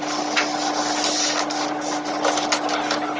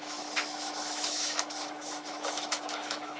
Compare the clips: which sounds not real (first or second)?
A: second